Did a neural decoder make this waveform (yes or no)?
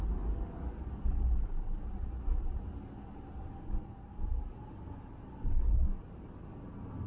no